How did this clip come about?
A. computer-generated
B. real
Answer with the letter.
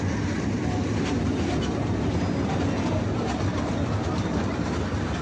B